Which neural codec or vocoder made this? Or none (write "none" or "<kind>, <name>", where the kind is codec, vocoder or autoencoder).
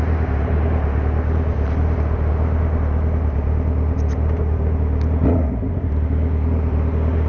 none